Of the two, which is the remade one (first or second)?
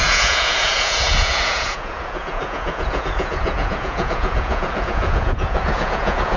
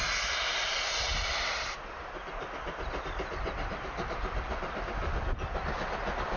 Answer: first